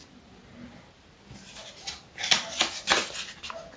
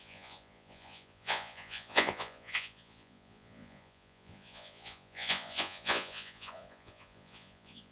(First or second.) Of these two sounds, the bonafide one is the first